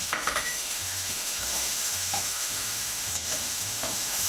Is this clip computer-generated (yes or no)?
yes